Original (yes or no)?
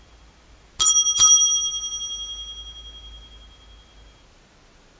yes